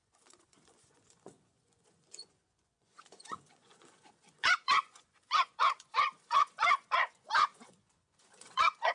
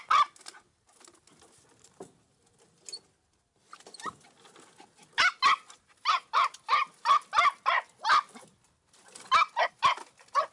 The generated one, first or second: first